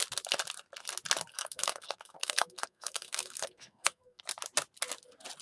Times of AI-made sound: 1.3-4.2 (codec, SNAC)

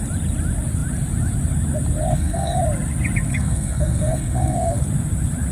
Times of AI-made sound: 2.1-2.6 (codec, SNAC); 3.3-4.8